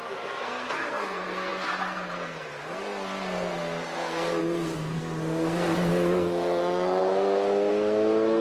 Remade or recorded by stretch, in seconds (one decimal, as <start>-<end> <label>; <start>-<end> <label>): 0.0-8.4 remade

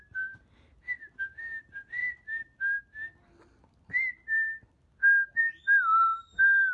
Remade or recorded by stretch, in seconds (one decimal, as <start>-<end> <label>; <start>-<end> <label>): 0.0-6.7 recorded

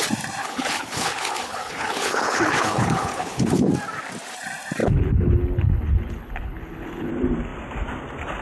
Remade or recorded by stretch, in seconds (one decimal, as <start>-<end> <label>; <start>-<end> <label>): 0.0-0.4 recorded; 0.4-3.7 remade; 3.7-4.8 recorded; 4.8-7.1 remade; 7.1-8.4 recorded

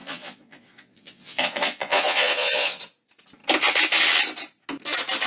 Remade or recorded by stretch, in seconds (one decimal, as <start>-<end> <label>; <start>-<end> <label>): 0.0-2.8 remade; 2.8-5.3 recorded

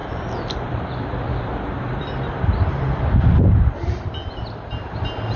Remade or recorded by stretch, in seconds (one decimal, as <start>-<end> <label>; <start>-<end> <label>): 0.0-3.2 remade; 3.2-5.4 recorded